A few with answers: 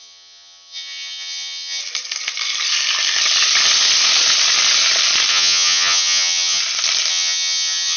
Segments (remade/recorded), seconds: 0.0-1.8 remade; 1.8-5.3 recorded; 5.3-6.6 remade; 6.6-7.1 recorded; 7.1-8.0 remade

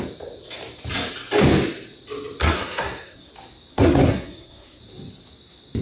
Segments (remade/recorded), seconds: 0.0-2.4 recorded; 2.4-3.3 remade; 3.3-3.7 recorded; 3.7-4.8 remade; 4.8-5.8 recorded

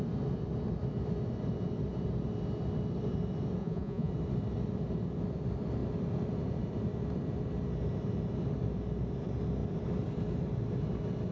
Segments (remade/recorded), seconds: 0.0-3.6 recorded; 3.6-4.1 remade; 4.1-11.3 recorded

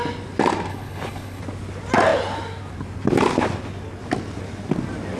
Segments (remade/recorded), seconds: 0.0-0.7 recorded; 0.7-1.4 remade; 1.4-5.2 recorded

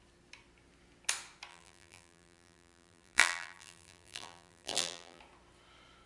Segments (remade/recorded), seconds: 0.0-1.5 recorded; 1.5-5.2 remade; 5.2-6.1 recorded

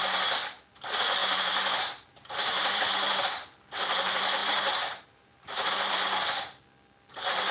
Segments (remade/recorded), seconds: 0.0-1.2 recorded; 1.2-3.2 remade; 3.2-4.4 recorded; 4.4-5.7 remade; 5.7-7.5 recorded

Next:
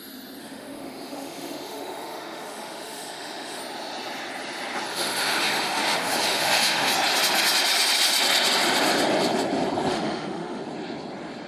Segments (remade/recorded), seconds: 0.0-0.4 recorded; 0.4-3.6 remade; 3.6-4.9 recorded; 4.9-6.9 remade; 6.9-9.9 recorded; 9.9-10.6 remade; 10.6-11.5 recorded

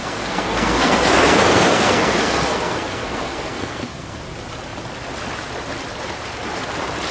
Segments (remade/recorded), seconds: 0.0-4.2 remade; 4.2-7.1 recorded